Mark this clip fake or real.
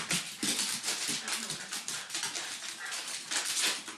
real